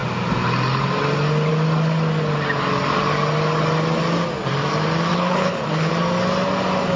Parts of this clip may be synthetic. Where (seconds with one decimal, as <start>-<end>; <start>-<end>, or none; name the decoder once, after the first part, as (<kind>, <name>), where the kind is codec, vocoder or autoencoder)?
5.1-5.9 (codec, HILCodec)